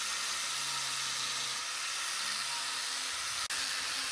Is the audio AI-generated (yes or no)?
no